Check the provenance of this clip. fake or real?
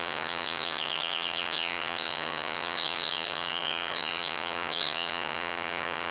fake